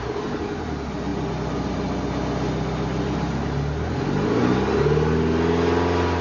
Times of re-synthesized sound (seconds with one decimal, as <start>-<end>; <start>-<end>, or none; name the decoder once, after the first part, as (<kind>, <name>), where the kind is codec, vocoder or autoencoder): none